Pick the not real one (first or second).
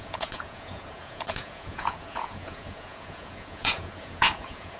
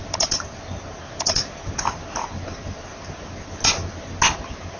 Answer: first